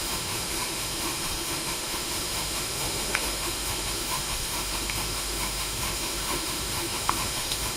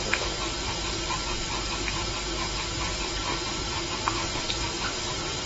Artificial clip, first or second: first